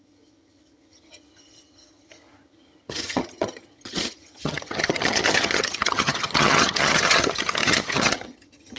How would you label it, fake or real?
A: fake